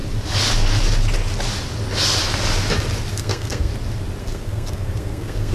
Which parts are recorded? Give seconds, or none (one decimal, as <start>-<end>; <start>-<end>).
0.0-3.1; 3.7-4.2